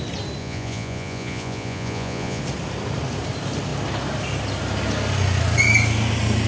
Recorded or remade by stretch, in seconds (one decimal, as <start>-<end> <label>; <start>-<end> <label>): 0.0-0.4 recorded; 0.4-2.4 remade; 2.4-6.5 recorded